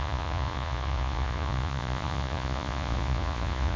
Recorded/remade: remade